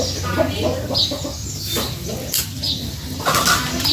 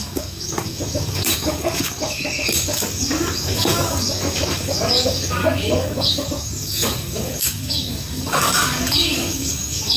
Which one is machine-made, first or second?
second